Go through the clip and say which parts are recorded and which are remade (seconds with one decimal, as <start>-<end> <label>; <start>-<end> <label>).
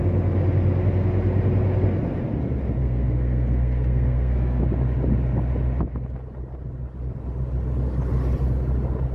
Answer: 0.0-2.8 recorded; 2.8-4.6 remade; 4.6-9.1 recorded